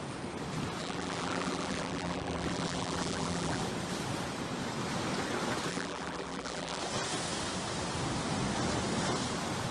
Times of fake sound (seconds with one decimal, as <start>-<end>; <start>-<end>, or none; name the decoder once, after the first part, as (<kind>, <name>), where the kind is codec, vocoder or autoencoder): 0.8-3.6 (vocoder, BigVGAN v2); 5.7-6.8